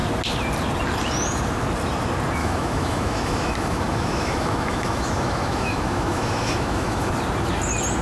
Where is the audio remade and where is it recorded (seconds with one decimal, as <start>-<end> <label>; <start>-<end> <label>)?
0.0-2.4 recorded; 2.4-7.1 remade; 7.1-8.0 recorded